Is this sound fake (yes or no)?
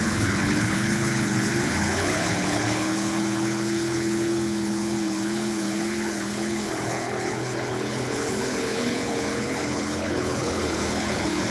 yes